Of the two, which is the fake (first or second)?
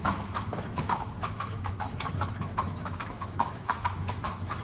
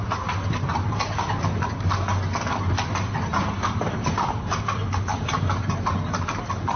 first